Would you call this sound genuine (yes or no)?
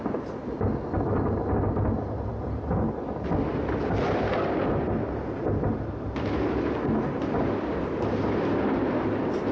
yes